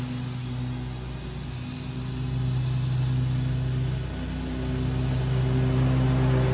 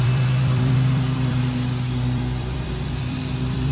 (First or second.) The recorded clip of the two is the first